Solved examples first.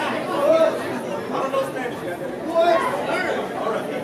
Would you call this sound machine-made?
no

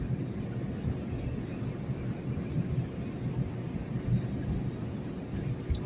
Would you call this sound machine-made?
no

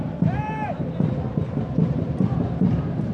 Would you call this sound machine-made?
yes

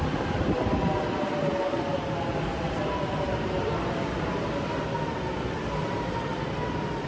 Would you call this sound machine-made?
no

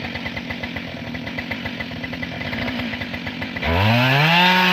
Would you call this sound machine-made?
no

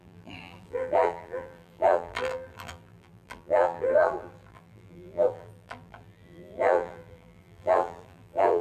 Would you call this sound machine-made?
yes